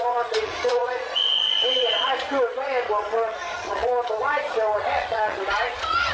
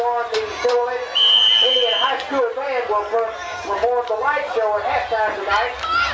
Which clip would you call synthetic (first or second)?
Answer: first